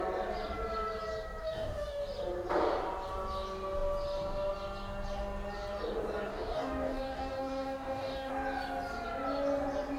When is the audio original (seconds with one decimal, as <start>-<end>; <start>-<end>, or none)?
0.0-1.4; 2.0-6.3; 8.3-10.0

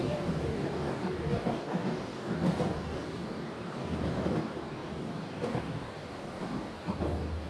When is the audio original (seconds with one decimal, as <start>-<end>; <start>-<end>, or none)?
none

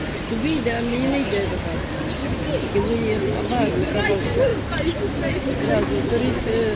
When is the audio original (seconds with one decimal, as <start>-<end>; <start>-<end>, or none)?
0.0-6.8